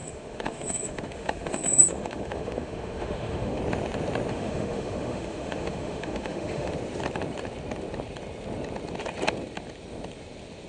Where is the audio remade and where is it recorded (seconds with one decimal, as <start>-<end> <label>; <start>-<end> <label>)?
0.0-3.6 remade; 3.6-4.3 recorded; 4.3-6.7 remade; 6.7-10.7 recorded